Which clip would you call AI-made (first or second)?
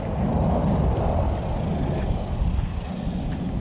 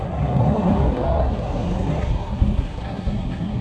second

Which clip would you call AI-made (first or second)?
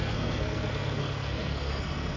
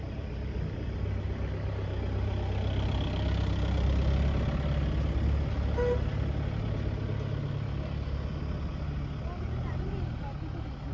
first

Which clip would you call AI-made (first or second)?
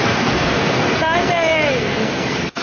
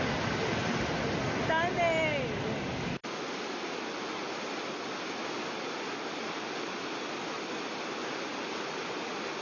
first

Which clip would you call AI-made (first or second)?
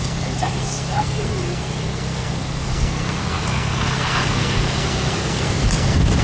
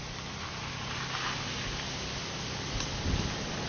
first